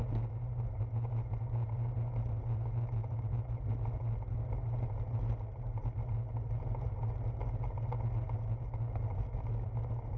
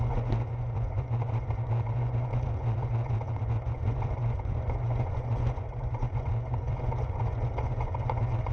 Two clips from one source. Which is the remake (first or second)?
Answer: second